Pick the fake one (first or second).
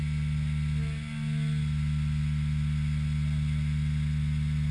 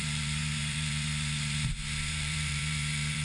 second